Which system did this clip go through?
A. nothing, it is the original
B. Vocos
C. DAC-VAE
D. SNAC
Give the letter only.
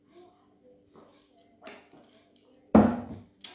A